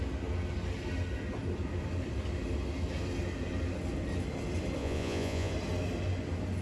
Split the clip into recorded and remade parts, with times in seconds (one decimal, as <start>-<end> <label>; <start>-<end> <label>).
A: 0.0-4.8 recorded; 4.8-5.5 remade; 5.5-6.6 recorded